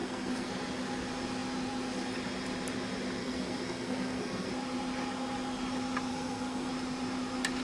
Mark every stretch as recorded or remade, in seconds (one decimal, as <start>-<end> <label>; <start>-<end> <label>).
0.0-0.5 remade; 0.5-3.2 recorded; 3.2-4.5 remade; 4.5-6.1 recorded; 6.1-6.7 remade; 6.7-7.6 recorded